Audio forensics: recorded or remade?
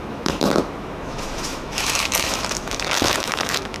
remade